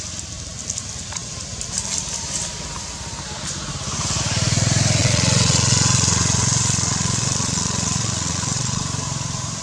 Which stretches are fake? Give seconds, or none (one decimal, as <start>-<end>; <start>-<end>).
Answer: 5.0-8.8